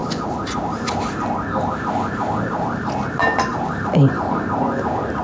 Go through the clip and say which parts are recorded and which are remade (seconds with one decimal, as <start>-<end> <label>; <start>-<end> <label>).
0.0-3.5 recorded; 3.5-5.2 remade